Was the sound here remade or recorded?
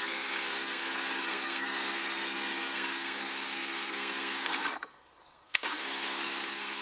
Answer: remade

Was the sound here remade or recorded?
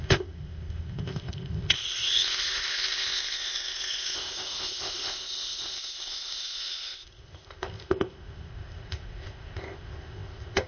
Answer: remade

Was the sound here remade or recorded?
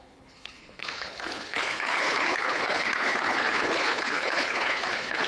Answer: remade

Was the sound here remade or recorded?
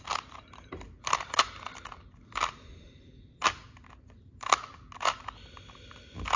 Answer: recorded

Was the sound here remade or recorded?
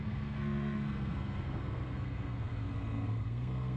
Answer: remade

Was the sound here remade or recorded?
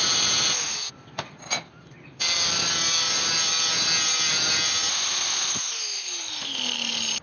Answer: recorded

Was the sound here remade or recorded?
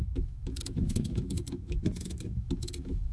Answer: remade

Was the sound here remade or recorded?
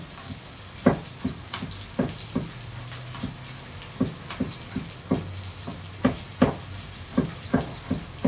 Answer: recorded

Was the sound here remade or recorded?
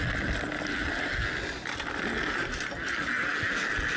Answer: recorded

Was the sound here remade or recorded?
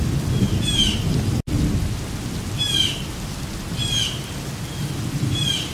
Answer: recorded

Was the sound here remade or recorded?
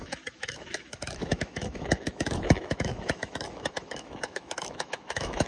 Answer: remade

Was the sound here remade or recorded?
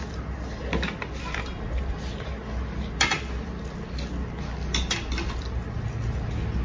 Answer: recorded